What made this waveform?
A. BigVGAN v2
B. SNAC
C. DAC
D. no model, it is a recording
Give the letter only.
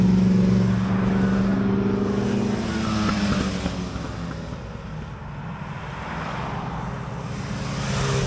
D